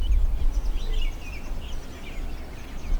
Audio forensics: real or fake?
real